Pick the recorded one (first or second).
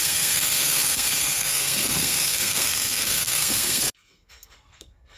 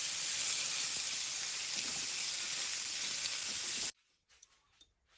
second